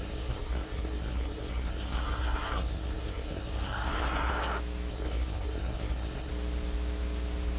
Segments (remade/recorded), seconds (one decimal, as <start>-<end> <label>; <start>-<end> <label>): 0.0-4.3 remade; 4.3-4.9 recorded; 4.9-6.3 remade; 6.3-7.6 recorded

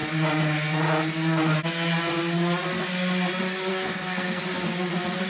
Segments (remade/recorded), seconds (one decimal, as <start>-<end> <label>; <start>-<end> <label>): 0.0-3.7 recorded; 3.7-4.4 remade; 4.4-5.3 recorded

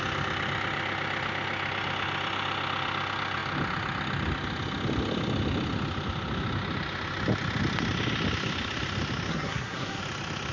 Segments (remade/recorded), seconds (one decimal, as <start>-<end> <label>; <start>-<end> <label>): 0.0-9.3 recorded; 9.3-10.0 remade; 10.0-10.5 recorded

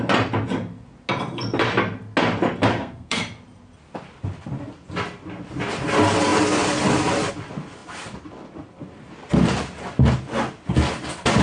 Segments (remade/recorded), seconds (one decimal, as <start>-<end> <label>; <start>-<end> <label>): 0.0-2.7 recorded; 2.7-3.2 remade; 3.2-11.4 recorded

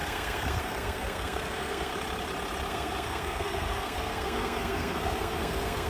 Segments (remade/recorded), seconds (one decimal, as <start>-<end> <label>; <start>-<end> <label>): 0.0-1.9 remade; 1.9-2.7 recorded; 2.7-5.9 remade